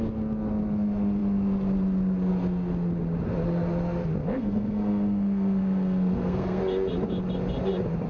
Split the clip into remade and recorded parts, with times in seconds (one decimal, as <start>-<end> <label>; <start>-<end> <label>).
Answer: 0.0-4.2 recorded; 4.2-6.6 remade; 6.6-8.1 recorded